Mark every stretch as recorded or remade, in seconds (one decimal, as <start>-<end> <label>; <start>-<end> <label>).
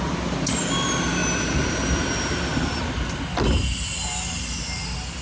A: 0.0-5.2 recorded